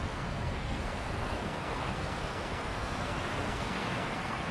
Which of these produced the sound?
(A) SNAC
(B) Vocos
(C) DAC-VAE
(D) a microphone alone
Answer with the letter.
A